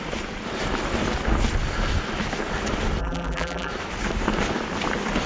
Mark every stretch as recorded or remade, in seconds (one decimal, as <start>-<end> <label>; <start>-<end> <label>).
0.0-3.0 recorded; 3.0-3.7 remade; 3.7-5.3 recorded